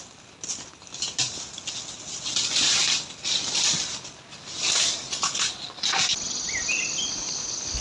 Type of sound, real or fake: real